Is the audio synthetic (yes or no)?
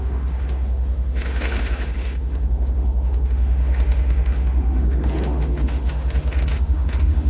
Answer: yes